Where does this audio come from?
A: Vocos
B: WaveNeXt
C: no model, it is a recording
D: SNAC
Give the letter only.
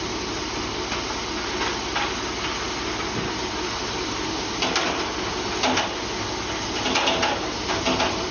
C